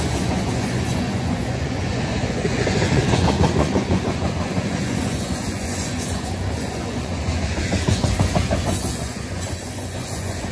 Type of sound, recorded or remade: remade